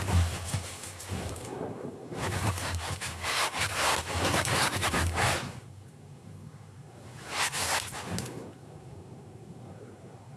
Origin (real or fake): fake